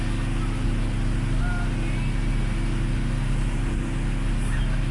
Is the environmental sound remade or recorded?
recorded